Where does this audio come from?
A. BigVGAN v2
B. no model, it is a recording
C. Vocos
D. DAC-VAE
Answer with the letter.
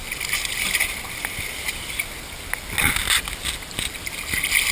B